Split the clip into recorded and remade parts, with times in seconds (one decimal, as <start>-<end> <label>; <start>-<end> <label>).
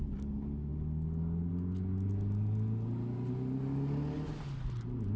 0.0-5.2 recorded